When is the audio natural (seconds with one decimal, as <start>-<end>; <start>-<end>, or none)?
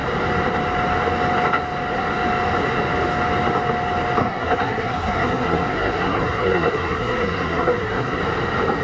0.0-4.2; 8.2-8.8